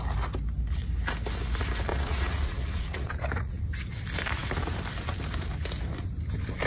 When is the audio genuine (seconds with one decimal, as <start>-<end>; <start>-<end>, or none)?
0.0-1.9; 3.6-6.7